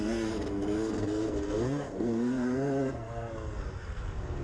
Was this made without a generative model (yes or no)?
no